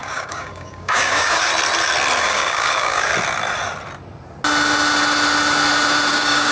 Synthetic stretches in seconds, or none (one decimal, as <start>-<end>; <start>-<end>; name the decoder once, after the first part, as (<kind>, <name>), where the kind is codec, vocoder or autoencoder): 0.0-1.5 (codec, DAC); 2.2-3.1; 6.1-6.5